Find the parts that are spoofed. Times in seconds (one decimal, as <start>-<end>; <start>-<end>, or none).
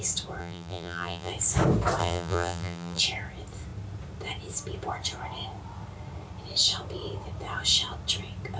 0.4-1.3; 2.0-3.0